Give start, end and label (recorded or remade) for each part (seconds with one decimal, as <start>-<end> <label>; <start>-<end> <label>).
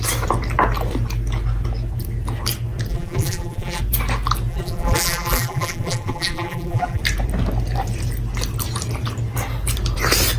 0.0-2.9 recorded; 2.9-3.8 remade; 3.8-4.5 recorded; 4.5-7.0 remade; 7.0-10.4 recorded